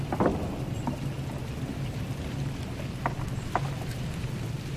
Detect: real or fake real